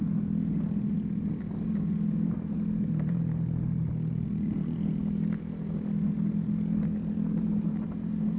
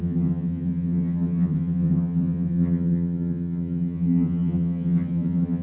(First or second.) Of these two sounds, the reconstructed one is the second